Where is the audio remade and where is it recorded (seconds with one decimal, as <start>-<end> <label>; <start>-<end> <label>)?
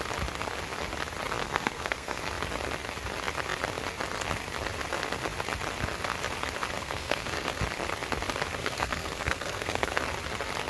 0.0-1.4 recorded; 1.4-2.2 remade; 2.2-6.8 recorded; 6.8-7.6 remade; 7.6-8.6 recorded; 8.6-10.0 remade; 10.0-10.7 recorded